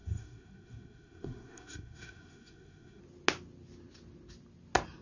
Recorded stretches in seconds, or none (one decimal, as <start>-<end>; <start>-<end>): 3.0-5.0